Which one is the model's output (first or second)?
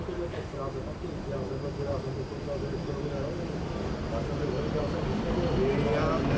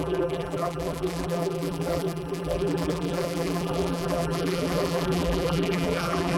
second